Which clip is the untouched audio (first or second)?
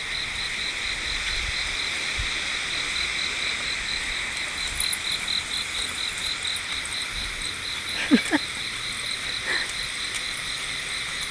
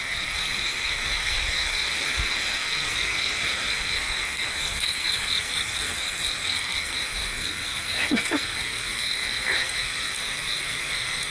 first